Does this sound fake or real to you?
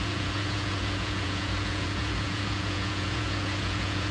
fake